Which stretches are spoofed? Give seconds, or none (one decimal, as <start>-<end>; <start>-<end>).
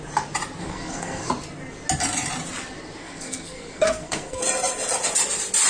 0.6-1.3; 3.0-4.4